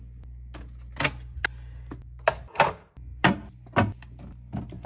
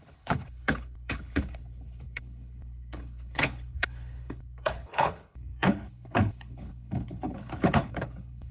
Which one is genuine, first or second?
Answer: first